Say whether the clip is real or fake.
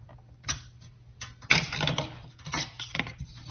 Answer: real